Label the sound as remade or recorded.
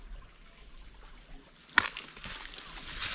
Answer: recorded